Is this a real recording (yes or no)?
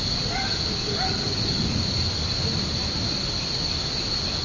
yes